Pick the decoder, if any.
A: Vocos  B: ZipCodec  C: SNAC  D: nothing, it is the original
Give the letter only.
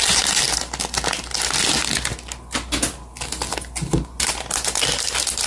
D